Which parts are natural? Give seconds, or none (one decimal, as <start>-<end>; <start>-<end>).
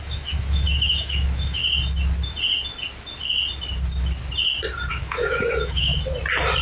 1.6-4.9; 5.9-6.6